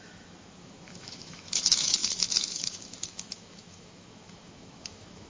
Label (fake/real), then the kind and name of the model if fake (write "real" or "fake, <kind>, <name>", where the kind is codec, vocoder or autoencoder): fake, autoencoder, DAC-VAE